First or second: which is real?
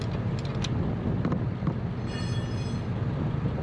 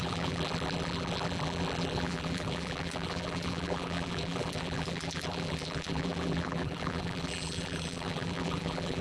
first